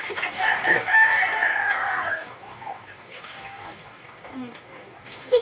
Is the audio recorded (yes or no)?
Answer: no